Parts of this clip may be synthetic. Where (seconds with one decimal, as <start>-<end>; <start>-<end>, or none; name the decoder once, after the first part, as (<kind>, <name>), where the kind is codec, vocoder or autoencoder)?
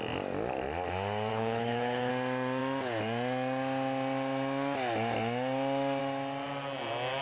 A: 1.3-2.1 (codec, HILCodec)